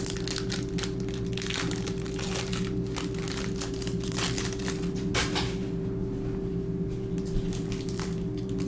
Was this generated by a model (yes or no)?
no